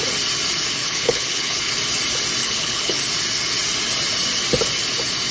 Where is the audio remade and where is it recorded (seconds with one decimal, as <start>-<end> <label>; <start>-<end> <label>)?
0.0-0.8 recorded; 0.8-1.7 remade; 1.7-2.4 recorded; 2.4-3.0 remade; 3.0-5.3 recorded